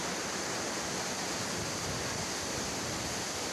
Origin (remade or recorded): recorded